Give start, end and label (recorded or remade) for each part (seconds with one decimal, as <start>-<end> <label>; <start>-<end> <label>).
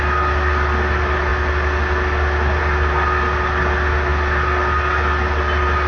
0.0-5.9 recorded